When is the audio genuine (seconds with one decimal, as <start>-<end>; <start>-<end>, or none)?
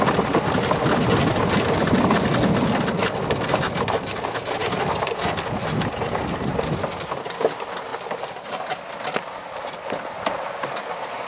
0.0-11.3